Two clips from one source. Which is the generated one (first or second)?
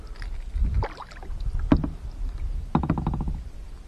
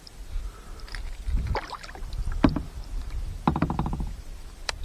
second